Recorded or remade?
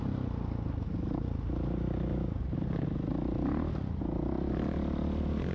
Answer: recorded